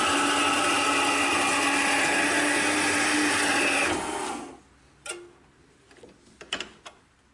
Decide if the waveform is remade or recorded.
recorded